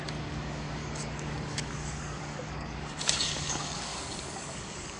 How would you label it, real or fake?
fake